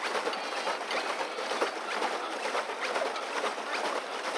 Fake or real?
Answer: real